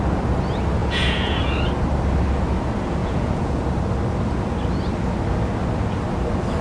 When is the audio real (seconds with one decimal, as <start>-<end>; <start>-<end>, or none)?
0.0-0.8; 1.5-3.0; 3.6-6.6